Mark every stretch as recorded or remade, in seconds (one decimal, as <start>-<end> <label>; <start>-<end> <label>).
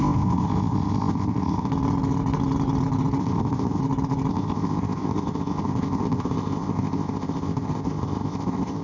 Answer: 0.0-1.7 remade; 1.7-3.2 recorded; 3.2-3.8 remade; 3.8-4.3 recorded; 4.3-8.8 remade